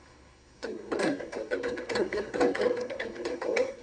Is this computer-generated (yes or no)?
yes